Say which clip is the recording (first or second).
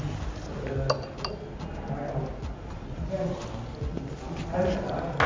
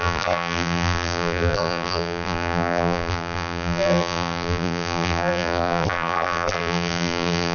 first